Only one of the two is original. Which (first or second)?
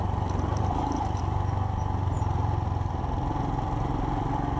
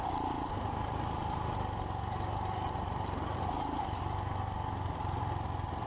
first